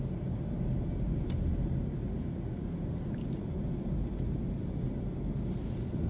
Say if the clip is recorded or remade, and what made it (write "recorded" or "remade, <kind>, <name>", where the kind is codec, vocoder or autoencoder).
recorded